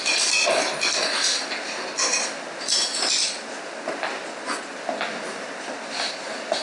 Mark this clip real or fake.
real